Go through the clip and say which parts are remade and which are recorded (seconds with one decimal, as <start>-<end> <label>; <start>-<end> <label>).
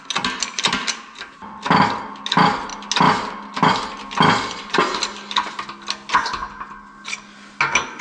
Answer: 0.0-8.0 recorded